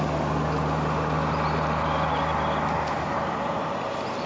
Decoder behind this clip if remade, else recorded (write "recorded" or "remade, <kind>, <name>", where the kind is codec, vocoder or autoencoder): recorded